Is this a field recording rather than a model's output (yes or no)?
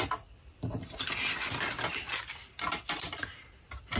yes